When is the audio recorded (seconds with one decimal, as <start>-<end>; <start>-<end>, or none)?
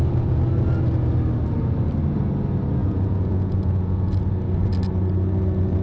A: 0.0-2.8; 4.2-5.8